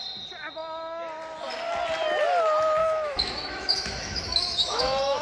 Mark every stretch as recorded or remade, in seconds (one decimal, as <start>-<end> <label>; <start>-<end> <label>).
0.0-2.8 recorded; 2.8-5.2 remade